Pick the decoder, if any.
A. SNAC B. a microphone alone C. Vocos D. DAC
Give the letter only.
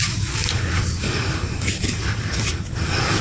D